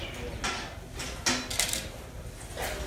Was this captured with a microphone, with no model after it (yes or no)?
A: yes